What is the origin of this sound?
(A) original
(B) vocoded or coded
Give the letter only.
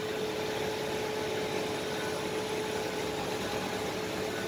A